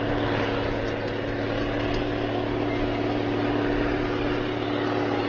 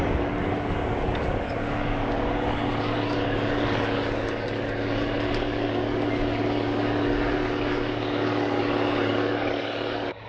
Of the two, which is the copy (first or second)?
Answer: second